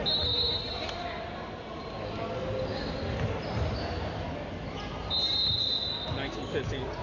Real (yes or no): yes